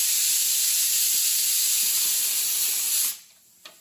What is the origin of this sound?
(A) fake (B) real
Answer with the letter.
A